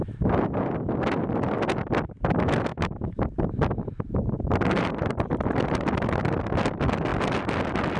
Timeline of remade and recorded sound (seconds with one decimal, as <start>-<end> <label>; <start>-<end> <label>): 0.0-8.0 recorded